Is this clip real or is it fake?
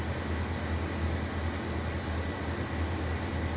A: real